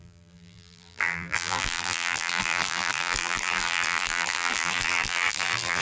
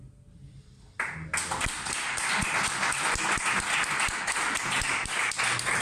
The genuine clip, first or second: second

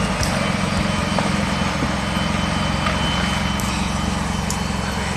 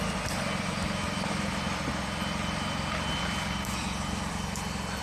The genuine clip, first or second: first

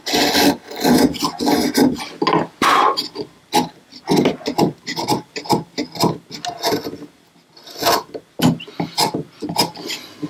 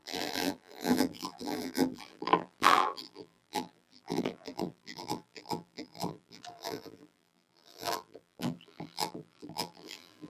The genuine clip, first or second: first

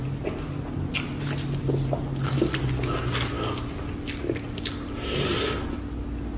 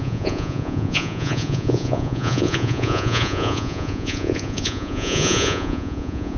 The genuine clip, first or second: first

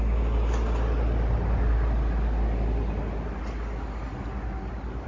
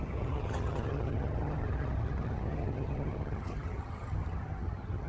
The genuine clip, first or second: first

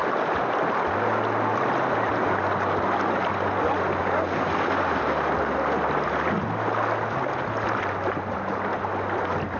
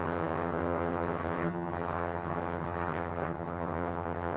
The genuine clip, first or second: first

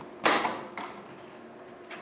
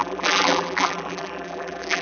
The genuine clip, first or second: first